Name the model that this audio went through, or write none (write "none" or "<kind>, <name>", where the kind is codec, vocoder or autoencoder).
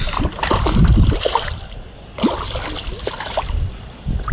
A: none